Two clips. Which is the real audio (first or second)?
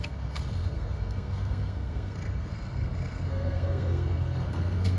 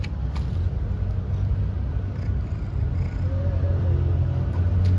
second